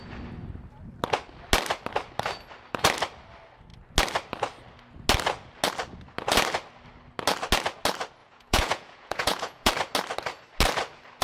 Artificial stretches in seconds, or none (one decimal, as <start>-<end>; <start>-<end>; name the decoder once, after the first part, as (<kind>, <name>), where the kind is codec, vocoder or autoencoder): 8.2-9.7 (vocoder, Vocos)